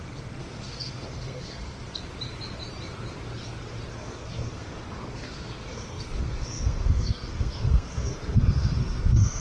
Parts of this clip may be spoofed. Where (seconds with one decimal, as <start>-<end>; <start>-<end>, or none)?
0.0-2.0; 3.9-9.4

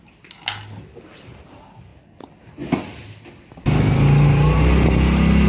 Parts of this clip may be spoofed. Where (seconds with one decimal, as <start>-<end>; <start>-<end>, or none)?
none

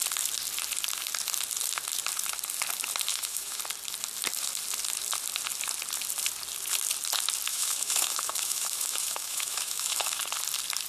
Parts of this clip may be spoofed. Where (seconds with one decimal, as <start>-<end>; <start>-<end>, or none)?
3.1-3.6; 7.5-10.2

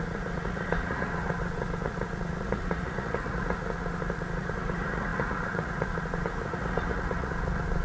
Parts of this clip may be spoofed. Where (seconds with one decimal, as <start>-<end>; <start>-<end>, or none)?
0.0-7.8

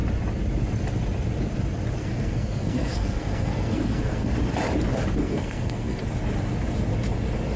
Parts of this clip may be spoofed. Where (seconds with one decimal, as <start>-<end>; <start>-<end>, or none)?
2.0-4.3; 5.2-6.0

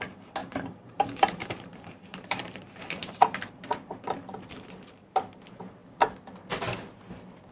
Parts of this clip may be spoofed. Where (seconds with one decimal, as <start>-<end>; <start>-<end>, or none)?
0.4-3.9

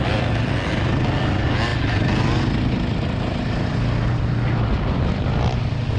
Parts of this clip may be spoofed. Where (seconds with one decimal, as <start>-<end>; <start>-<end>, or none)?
none